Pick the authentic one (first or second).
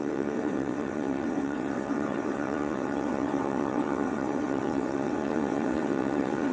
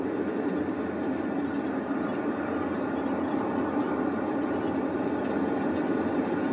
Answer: second